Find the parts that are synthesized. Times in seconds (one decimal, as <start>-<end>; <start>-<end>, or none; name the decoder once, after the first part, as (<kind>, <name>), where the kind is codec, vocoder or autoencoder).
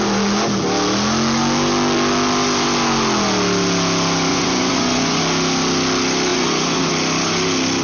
4.3-5.2 (vocoder, Vocos); 6.3-6.9